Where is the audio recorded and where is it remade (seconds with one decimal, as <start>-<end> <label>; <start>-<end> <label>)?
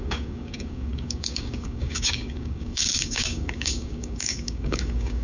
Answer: 0.0-5.2 remade